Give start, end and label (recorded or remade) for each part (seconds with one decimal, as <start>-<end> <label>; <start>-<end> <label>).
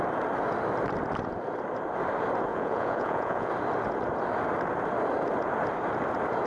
0.0-2.5 recorded; 2.5-3.5 remade; 3.5-6.5 recorded